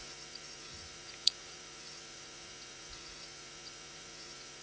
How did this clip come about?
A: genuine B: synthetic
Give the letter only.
B